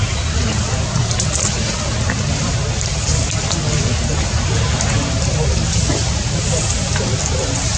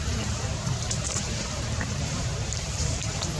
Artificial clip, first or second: second